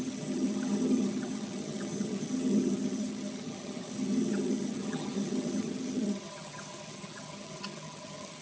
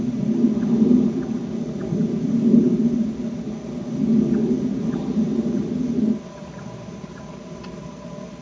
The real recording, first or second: second